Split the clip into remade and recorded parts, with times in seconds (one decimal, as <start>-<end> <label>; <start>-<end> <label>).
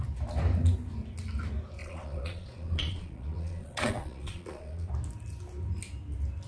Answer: 0.0-1.8 recorded; 1.8-4.9 remade; 4.9-6.5 recorded